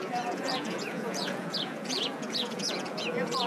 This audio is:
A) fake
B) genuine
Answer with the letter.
A